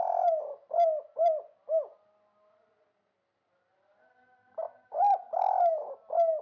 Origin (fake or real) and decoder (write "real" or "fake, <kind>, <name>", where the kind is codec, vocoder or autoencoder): real